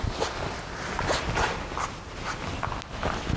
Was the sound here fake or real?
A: real